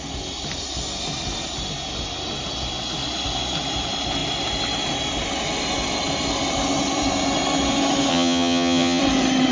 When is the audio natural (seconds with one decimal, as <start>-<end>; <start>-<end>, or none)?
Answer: 0.0-8.1; 9.0-9.5